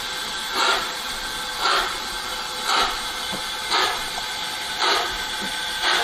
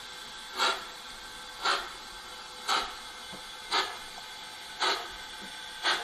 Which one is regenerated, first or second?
first